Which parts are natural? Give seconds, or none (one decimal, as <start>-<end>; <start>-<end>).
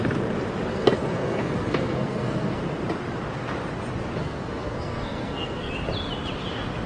0.0-0.7; 2.6-4.2; 5.7-6.9